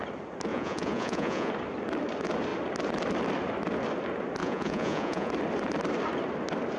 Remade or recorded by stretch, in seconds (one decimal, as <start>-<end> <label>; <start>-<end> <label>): 0.0-0.5 recorded; 0.5-1.5 remade; 1.5-4.4 recorded; 4.4-5.3 remade; 5.3-6.8 recorded

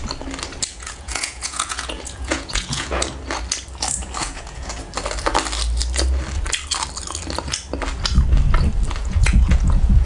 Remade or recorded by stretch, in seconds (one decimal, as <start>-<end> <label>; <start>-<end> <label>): 0.0-0.7 recorded; 0.7-3.0 remade; 3.0-4.2 recorded; 4.2-4.7 remade; 4.7-9.0 recorded; 9.0-10.1 remade

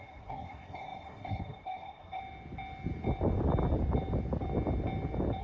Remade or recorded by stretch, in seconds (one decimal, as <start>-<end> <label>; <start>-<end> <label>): 0.0-2.2 remade; 2.2-5.4 recorded

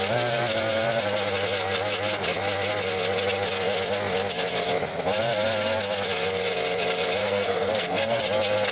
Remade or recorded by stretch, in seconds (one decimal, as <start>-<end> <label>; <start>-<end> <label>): 0.0-7.2 recorded; 7.2-8.2 remade; 8.2-8.7 recorded

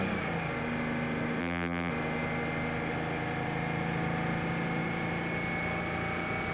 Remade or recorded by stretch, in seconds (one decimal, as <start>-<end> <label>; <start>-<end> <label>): 0.0-1.4 recorded; 1.4-1.9 remade; 1.9-6.5 recorded

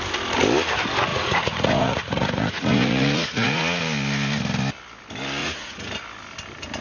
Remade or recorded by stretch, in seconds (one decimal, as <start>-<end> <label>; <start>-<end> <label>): 0.0-1.1 recorded; 1.1-3.6 remade; 3.6-5.4 recorded; 5.4-5.9 remade; 5.9-6.8 recorded

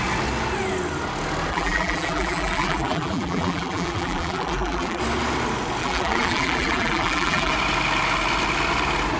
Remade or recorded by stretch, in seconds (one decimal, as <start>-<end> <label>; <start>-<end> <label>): 0.0-1.5 recorded; 1.5-5.0 remade; 5.0-5.8 recorded; 5.8-7.5 remade; 7.5-9.2 recorded